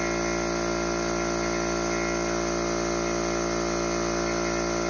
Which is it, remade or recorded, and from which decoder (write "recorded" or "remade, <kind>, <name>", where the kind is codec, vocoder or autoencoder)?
recorded